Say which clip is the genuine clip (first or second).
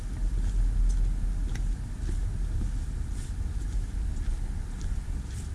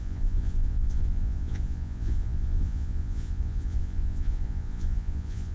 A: first